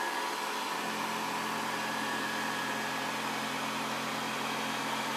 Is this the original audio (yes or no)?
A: yes